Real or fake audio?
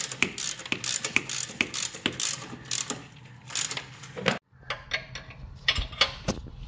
real